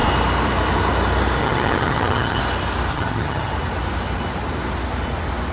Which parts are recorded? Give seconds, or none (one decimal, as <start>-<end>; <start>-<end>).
0.0-1.4; 2.4-2.9; 3.5-5.5